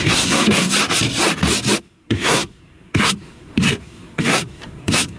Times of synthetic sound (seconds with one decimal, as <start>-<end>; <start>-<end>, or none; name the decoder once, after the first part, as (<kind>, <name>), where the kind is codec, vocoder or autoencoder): 0.0-0.7 (codec, SNAC); 1.8-5.2